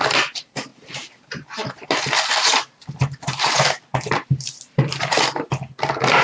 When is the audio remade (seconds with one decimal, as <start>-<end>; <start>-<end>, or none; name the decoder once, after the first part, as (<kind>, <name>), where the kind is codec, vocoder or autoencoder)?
3.9-5.5 (vocoder, BigVGAN v2)